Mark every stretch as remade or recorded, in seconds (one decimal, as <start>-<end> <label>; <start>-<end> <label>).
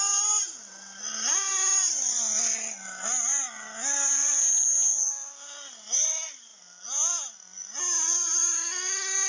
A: 0.0-9.3 recorded